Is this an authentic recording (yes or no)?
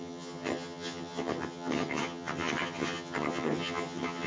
no